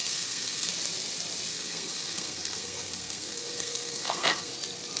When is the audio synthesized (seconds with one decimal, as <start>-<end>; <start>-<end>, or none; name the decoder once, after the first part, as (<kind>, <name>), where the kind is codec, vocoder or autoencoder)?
0.0-0.7 (codec, SNAC); 1.5-4.5